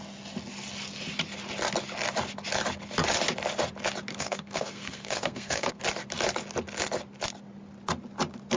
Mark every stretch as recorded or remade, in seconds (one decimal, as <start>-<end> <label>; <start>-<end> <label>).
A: 0.0-4.1 recorded; 4.1-5.8 remade; 5.8-8.6 recorded